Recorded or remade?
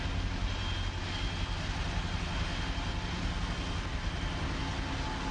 recorded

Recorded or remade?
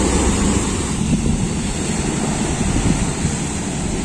recorded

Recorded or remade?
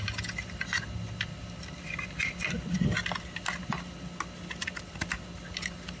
recorded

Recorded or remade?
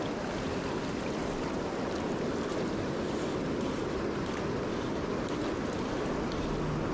recorded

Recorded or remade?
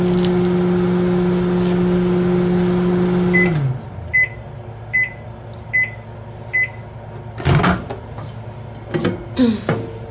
recorded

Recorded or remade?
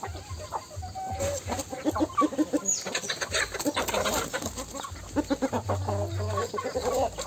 recorded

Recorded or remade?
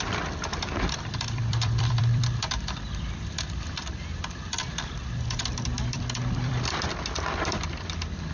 remade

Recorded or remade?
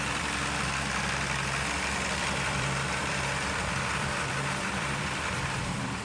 remade